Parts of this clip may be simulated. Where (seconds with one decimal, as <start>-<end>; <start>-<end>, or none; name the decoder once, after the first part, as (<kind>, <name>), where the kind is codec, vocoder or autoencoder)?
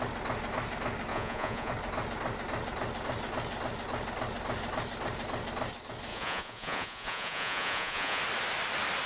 1.1-1.7 (vocoder, Vocos); 6.1-8.2